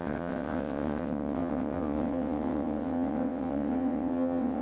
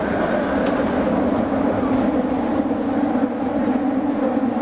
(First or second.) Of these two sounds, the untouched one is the second